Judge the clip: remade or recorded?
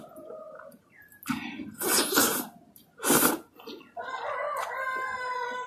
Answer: recorded